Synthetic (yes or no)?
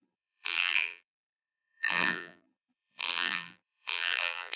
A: yes